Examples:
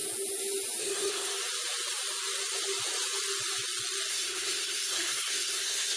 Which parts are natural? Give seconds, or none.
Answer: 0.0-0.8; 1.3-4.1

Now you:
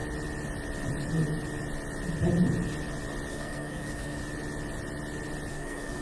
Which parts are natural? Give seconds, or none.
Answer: 0.0-3.3; 4.2-5.5

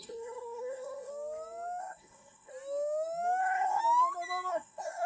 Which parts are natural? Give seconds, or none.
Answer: 1.1-1.8; 2.5-3.4; 3.8-4.5

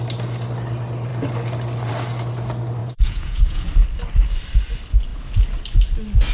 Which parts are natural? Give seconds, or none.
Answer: 0.0-2.8; 3.7-6.3

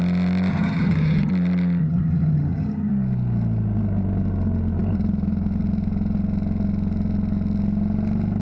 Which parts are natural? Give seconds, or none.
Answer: 0.0-0.5; 1.3-1.8; 2.9-8.4

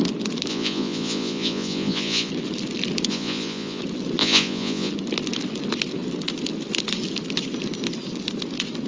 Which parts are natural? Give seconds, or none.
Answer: 0.0-0.5; 2.3-3.1; 3.8-4.2; 4.9-8.9

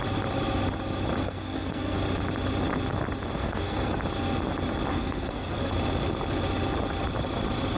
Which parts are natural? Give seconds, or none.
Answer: 0.0-1.2; 2.0-3.4; 4.0-4.9; 5.7-7.8

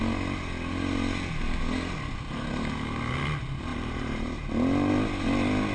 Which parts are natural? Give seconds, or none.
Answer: 0.0-3.7; 4.5-5.7